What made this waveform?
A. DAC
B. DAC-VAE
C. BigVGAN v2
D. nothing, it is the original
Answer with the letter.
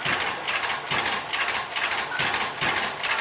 D